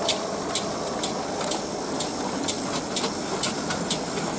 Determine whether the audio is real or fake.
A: real